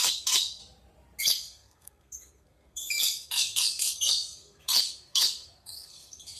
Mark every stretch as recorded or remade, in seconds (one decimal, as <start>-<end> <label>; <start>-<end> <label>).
0.0-0.6 remade; 0.6-1.2 recorded; 1.2-6.4 remade